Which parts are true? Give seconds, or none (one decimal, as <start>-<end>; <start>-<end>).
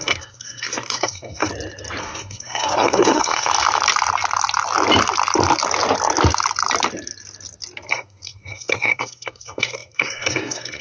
1.5-2.0; 3.5-7.9